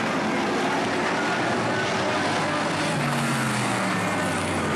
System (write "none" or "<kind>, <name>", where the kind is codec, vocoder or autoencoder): none